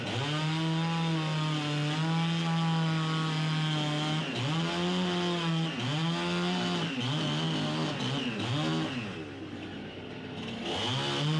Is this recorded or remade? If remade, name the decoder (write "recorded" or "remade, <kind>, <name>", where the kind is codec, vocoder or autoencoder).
recorded